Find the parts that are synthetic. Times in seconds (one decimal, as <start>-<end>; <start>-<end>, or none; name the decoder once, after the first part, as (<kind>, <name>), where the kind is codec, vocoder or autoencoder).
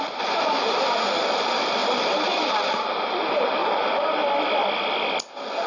none